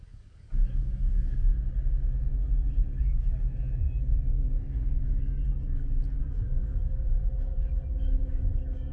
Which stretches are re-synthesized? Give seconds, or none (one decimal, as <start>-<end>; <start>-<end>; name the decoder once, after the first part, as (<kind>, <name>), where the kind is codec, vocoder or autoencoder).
0.0-1.5 (codec, DAC); 3.0-3.5; 4.4-5.4; 6.2-8.9